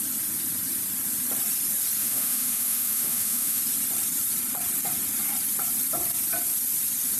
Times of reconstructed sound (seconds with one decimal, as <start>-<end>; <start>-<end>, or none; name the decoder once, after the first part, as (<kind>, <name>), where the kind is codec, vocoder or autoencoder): 2.0-3.6 (autoencoder, DAC-VAE)